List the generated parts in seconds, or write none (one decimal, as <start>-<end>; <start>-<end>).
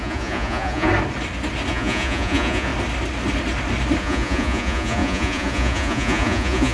0.0-0.9; 1.7-2.7; 4.0-6.7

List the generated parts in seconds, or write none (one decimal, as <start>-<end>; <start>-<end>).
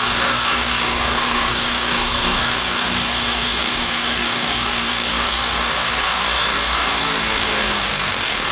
0.0-8.5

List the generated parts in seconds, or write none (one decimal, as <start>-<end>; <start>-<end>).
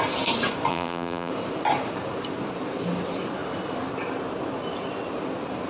0.7-1.3